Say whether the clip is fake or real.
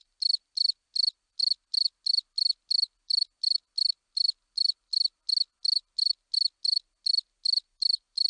real